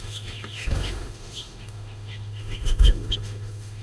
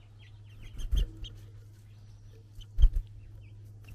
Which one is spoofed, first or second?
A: first